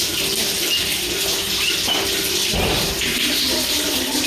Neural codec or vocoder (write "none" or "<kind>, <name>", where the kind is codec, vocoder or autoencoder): none